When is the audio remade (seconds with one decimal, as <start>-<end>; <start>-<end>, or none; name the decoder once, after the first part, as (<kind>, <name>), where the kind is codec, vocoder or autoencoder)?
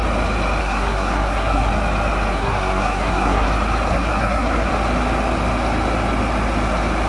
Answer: 0.6-1.7 (codec, SNAC); 2.3-3.5; 3.9-4.7